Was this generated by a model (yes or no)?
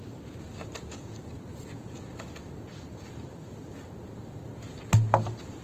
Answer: no